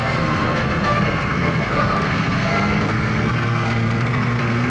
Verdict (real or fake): fake